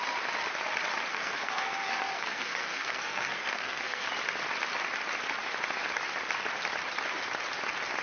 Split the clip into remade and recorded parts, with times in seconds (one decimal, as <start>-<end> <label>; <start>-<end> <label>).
0.0-1.1 recorded; 1.1-4.1 remade; 4.1-8.0 recorded